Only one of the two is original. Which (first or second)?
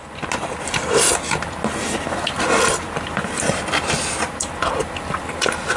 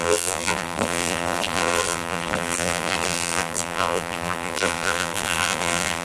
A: first